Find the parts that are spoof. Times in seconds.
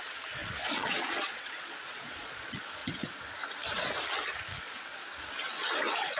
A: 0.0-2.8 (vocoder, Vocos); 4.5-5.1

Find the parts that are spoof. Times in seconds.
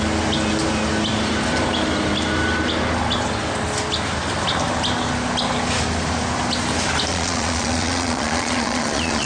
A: 7.1-9.3 (vocoder, Vocos)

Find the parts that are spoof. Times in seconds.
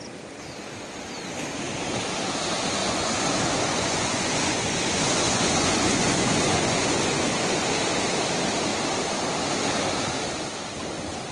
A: 2.8-7.8 (vocoder, Vocos)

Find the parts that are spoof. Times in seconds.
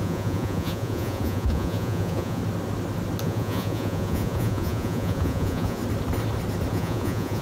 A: 0.0-2.4 (vocoder, Vocos); 3.2-5.8; 6.7-7.4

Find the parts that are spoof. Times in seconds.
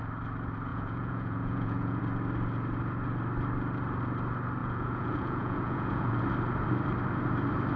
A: 0.7-2.0 (vocoder, Vocos); 4.6-6.2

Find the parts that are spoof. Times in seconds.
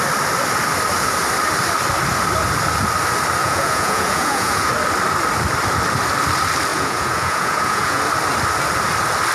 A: 3.4-4.7 (vocoder, Vocos); 6.7-8.0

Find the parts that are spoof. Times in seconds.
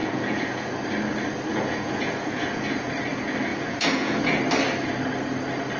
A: 0.0-0.7 (vocoder, Vocos); 1.5-2.9; 3.5-4.4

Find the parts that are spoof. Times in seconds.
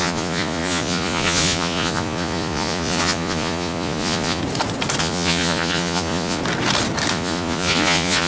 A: 0.0-4.4 (vocoder, Vocos); 5.0-6.4; 7.1-8.3